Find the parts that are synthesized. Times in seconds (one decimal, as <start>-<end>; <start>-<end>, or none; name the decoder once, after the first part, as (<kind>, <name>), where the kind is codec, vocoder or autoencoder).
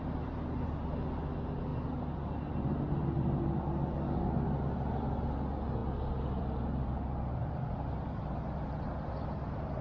none